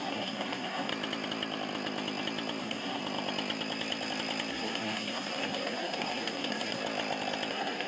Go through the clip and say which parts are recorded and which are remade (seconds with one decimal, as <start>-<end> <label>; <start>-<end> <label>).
0.0-0.9 remade; 0.9-2.6 recorded; 2.6-3.0 remade; 3.0-4.5 recorded; 4.5-6.8 remade; 6.8-7.5 recorded; 7.5-7.9 remade